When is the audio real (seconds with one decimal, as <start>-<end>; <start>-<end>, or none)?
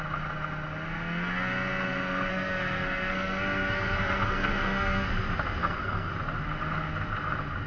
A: 0.0-2.3; 5.1-5.6; 6.1-7.7